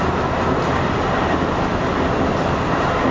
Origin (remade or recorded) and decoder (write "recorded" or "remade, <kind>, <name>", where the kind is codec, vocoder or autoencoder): recorded